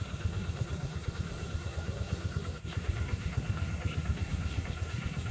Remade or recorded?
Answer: remade